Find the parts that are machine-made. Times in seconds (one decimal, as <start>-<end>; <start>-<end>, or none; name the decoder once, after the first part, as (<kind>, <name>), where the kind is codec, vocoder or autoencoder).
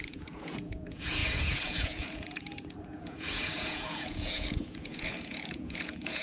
0.0-6.2 (vocoder, Vocos)